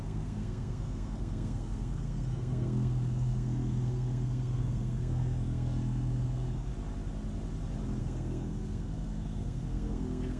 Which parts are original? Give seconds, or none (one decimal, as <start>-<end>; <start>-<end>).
6.7-8.0